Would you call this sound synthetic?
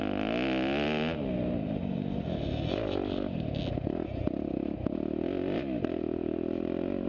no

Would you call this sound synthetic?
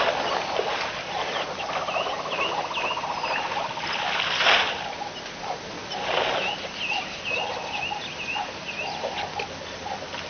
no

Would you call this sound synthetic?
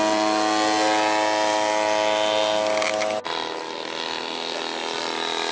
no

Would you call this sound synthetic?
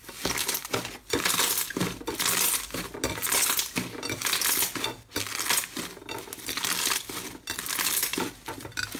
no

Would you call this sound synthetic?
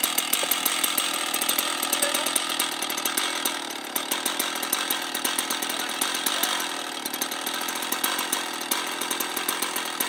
no